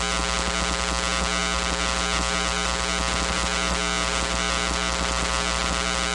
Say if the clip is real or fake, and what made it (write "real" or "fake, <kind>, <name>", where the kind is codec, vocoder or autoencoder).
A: real